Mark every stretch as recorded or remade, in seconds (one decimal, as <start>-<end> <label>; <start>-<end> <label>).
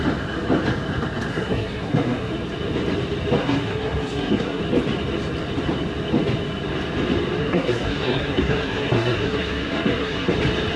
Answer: 0.0-1.3 recorded; 1.3-2.3 remade; 2.3-3.4 recorded; 3.4-4.6 remade; 4.6-7.4 recorded; 7.4-10.3 remade; 10.3-10.8 recorded